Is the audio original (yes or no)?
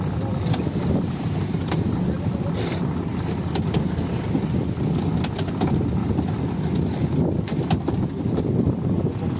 yes